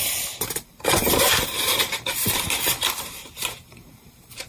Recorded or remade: remade